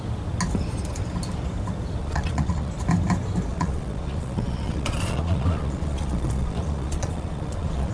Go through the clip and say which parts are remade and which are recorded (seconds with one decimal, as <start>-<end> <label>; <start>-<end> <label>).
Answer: 0.0-2.0 recorded; 2.0-2.7 remade; 2.7-3.5 recorded; 3.5-7.9 remade